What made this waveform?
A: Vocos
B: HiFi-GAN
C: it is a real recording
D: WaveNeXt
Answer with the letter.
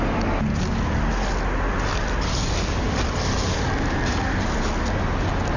C